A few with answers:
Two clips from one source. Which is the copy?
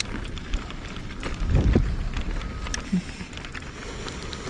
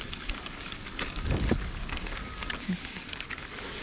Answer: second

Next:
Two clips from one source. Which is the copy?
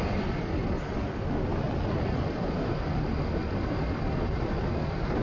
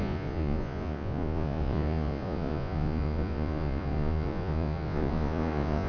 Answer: second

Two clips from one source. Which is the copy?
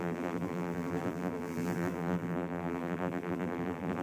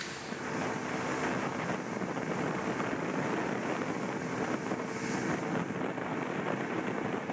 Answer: first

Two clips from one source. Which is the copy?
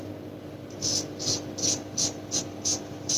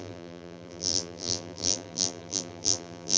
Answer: second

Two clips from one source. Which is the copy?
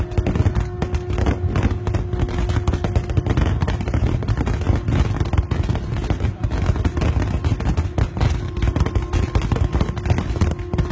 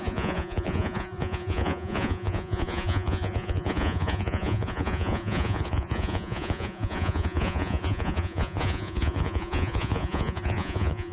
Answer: second